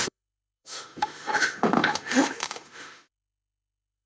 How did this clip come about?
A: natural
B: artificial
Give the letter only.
B